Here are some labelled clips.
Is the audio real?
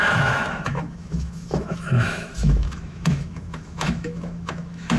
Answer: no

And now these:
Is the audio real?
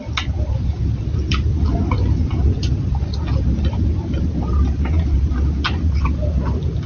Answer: yes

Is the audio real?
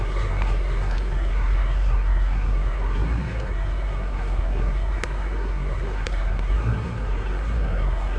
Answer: no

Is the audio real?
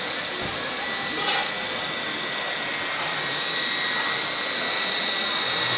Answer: yes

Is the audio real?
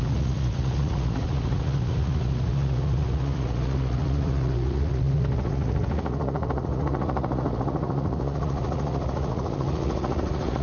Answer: no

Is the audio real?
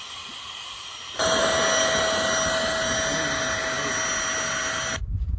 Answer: yes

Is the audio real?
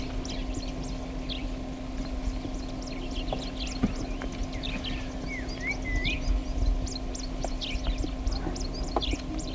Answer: yes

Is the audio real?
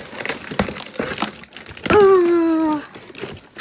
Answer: yes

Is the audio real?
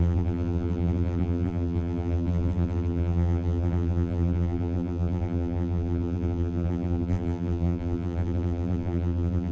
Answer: no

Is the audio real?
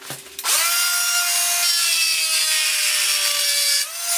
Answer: yes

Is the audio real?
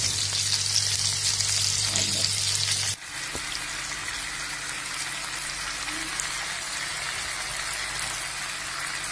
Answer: yes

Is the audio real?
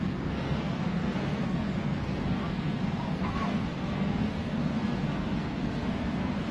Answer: no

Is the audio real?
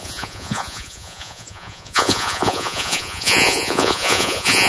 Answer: no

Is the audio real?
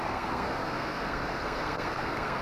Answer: no